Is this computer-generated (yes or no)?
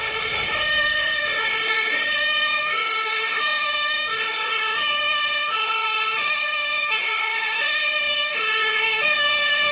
yes